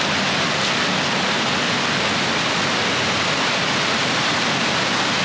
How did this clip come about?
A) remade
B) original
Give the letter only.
B